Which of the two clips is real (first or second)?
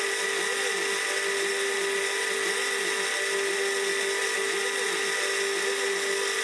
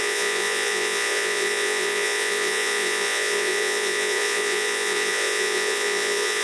first